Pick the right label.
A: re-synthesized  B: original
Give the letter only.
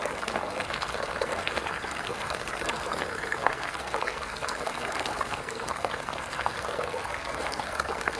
A